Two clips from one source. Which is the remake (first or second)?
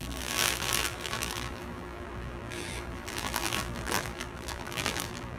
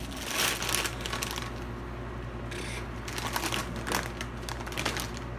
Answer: first